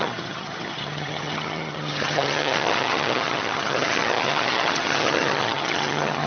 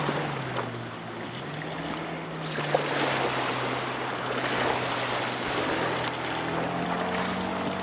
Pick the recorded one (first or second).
second